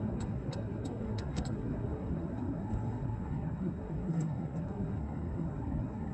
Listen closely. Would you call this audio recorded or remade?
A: remade